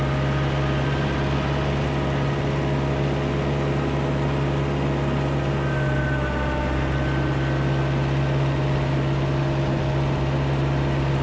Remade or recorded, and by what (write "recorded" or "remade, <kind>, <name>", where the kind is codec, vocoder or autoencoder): recorded